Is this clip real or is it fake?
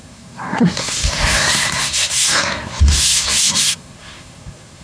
fake